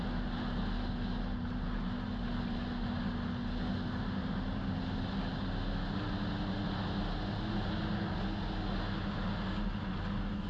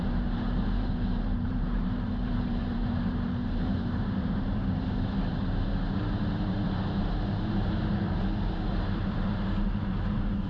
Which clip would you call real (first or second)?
first